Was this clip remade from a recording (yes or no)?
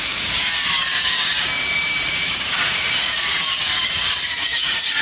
yes